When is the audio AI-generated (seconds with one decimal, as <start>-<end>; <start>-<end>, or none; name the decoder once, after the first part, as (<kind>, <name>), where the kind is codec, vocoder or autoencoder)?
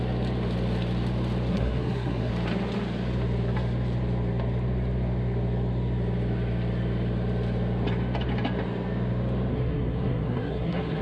1.5-2.3 (codec, SNAC); 9.5-11.0